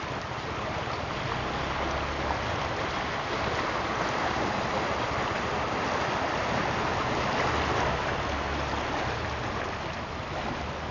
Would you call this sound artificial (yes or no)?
no